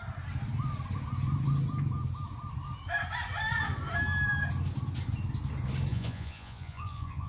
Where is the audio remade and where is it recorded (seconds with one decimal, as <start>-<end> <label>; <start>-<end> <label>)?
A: 0.0-5.9 recorded; 5.9-7.3 remade